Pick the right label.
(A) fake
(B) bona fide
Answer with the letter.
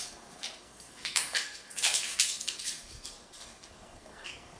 A